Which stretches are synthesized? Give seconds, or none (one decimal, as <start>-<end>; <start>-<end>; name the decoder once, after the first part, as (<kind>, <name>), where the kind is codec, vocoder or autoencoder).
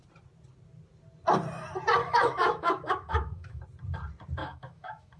2.0-3.6 (autoencoder, DAC-VAE); 4.4-5.2